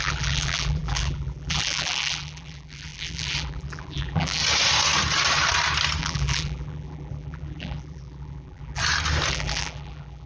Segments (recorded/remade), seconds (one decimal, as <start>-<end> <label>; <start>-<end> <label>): 0.0-4.4 remade; 4.4-6.0 recorded; 6.0-8.8 remade; 8.8-9.3 recorded; 9.3-10.3 remade